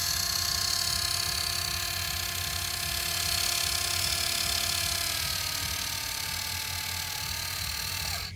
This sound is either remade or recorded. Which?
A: recorded